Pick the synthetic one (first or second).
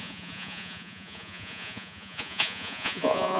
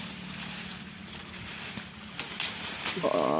first